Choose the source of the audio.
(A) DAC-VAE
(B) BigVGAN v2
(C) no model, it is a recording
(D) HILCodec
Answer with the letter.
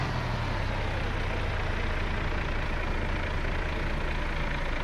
C